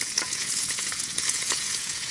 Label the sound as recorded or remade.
remade